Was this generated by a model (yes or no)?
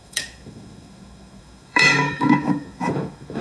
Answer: yes